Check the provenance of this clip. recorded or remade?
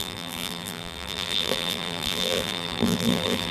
remade